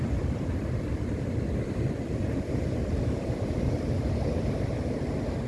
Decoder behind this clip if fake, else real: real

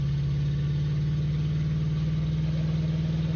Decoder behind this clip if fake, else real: real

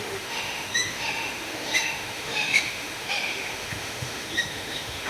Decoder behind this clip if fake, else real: fake, autoencoder, DAC-VAE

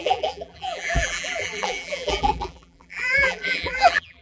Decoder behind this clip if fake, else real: fake, vocoder, BigVGAN v2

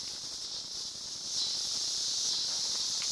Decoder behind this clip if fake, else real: real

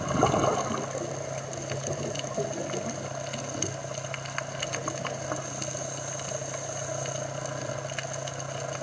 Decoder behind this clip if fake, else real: real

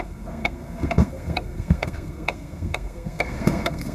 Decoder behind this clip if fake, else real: fake, codec, SNAC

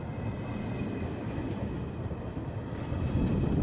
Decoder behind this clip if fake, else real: real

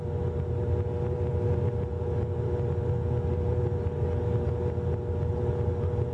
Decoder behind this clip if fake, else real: real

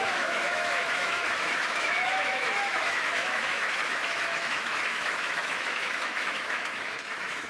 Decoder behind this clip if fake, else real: fake, autoencoder, DAC-VAE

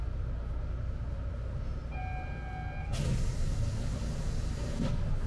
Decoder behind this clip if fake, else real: real